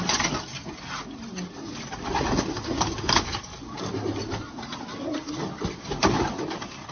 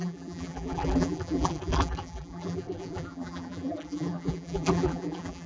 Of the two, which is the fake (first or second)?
second